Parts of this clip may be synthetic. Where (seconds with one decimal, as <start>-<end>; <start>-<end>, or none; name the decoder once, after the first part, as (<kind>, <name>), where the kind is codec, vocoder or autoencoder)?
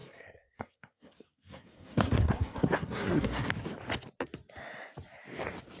0.0-3.5 (codec, SNAC)